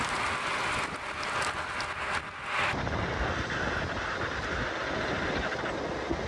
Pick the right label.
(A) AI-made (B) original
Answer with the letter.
B